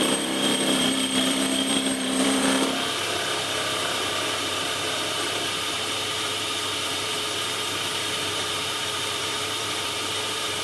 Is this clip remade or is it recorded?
remade